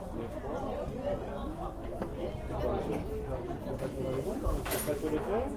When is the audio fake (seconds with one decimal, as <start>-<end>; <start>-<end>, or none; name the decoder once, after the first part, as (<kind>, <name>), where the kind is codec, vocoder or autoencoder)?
none